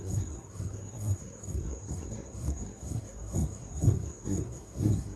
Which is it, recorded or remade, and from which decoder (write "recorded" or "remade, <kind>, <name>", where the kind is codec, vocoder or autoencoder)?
remade, codec, SNAC